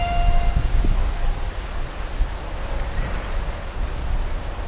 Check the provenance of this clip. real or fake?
real